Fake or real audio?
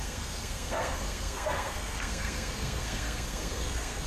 fake